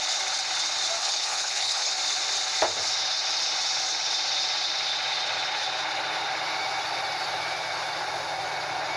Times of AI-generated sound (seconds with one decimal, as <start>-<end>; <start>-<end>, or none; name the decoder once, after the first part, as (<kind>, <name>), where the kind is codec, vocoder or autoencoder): 1.0-1.9 (codec, HILCodec)